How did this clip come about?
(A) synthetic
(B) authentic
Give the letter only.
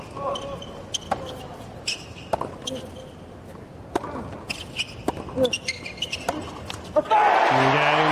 B